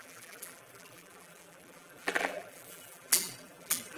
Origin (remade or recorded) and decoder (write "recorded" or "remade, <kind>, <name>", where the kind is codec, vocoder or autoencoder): remade, vocoder, BigVGAN v2